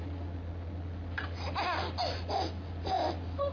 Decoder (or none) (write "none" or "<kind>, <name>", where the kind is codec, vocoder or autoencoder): none